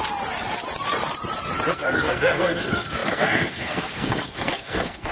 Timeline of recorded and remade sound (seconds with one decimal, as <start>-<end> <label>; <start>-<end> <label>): 0.0-1.7 recorded; 1.7-5.1 remade